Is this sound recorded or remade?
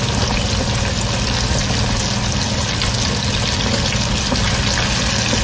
recorded